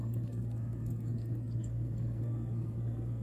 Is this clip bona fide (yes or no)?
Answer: no